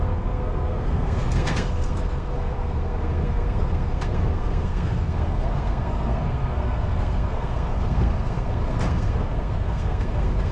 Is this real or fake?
fake